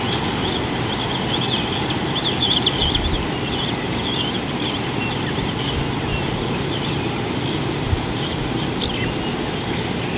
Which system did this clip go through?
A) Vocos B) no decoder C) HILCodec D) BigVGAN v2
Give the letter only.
B